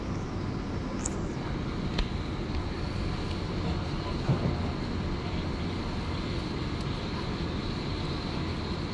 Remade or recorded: recorded